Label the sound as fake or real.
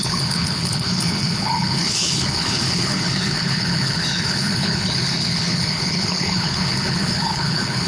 fake